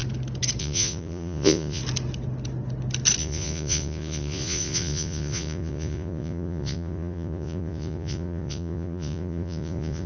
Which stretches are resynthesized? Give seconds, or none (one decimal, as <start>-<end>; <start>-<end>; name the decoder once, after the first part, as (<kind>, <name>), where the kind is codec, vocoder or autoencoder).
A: 0.6-1.8 (vocoder, Vocos); 3.2-10.1